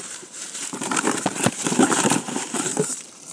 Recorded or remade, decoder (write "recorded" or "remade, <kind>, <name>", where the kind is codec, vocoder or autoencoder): remade, vocoder, BigVGAN v2